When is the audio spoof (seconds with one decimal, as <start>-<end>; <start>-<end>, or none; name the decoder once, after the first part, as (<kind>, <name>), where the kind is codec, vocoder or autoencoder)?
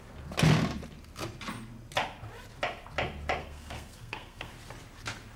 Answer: 3.4-4.5 (codec, SNAC)